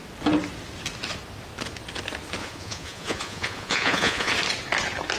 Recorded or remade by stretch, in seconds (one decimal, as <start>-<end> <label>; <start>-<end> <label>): 0.0-2.4 recorded; 2.4-4.3 remade; 4.3-5.2 recorded